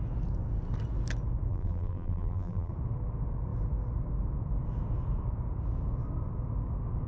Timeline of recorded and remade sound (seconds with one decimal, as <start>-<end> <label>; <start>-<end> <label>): 0.0-1.5 recorded; 1.5-2.7 remade; 2.7-7.1 recorded